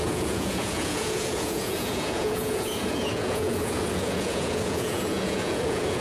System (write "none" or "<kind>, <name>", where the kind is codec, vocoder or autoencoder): vocoder, Vocos